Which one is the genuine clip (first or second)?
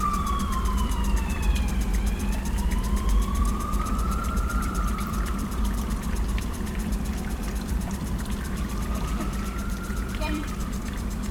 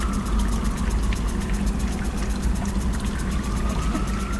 second